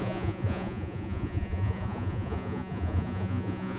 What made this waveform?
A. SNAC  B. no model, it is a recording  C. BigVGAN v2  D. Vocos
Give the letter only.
D